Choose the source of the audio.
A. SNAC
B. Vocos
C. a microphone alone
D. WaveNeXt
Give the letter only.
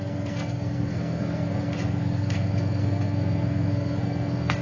A